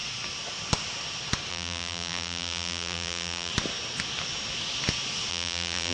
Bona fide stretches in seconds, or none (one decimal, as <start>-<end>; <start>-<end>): 0.0-1.5; 3.5-5.3